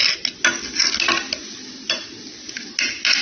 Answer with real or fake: real